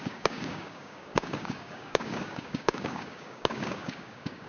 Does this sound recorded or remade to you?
remade